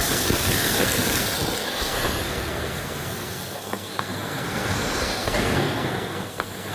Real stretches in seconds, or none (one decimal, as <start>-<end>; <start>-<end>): none